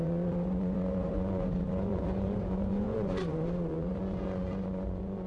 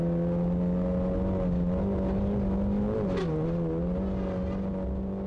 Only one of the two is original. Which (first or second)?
second